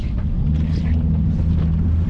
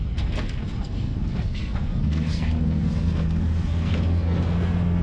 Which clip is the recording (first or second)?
first